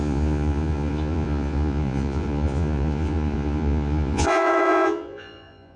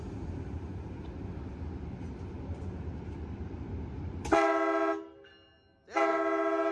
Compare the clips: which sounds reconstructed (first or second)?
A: first